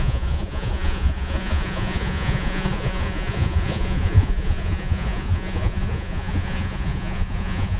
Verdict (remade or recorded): remade